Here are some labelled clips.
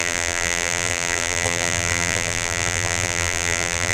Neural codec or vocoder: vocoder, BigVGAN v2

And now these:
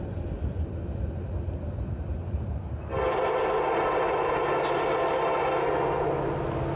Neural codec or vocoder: none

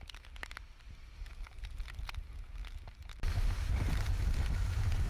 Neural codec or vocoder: none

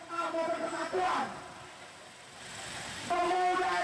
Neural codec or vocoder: vocoder, BigVGAN v2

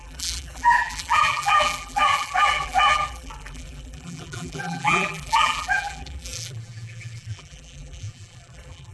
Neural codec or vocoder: vocoder, BigVGAN v2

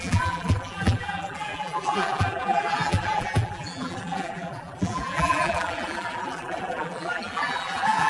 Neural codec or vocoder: vocoder, BigVGAN v2